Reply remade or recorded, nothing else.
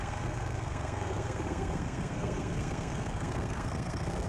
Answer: remade